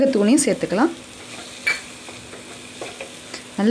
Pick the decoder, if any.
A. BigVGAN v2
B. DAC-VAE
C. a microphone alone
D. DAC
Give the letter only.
C